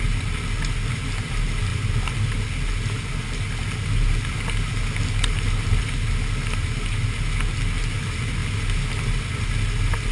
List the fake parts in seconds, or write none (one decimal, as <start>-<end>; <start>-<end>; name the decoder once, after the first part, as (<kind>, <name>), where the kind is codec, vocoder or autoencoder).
none